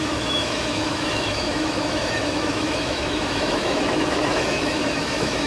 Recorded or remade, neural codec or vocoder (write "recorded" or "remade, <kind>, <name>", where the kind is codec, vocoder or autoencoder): remade, autoencoder, DAC-VAE